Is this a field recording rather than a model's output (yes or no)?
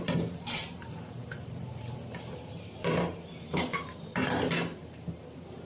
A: no